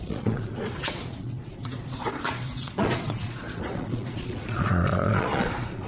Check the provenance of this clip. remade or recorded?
remade